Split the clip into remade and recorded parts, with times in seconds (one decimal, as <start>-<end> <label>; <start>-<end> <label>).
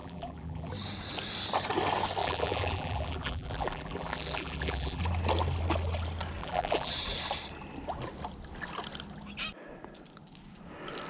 0.0-0.7 remade; 0.7-2.2 recorded; 2.2-5.0 remade; 5.0-6.4 recorded; 6.4-6.9 remade; 6.9-11.1 recorded